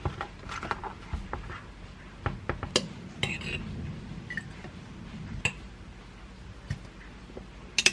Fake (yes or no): no